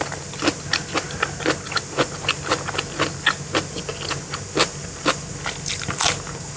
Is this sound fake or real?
real